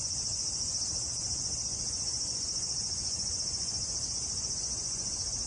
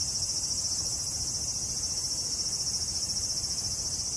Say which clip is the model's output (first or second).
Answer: first